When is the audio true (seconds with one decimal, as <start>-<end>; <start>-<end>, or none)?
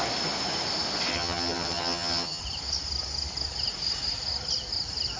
0.0-1.1; 2.4-5.2